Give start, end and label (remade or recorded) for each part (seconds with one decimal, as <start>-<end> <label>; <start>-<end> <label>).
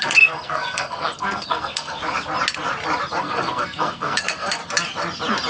0.0-2.0 remade; 2.0-3.2 recorded; 3.2-4.6 remade; 4.6-5.5 recorded